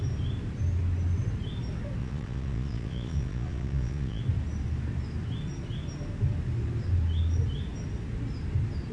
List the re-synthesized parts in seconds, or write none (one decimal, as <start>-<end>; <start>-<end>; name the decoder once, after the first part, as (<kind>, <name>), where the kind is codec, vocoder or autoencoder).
2.0-4.2 (vocoder, Vocos)